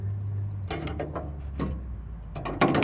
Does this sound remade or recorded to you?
recorded